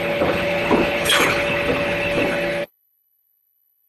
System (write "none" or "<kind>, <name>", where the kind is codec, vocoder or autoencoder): codec, HILCodec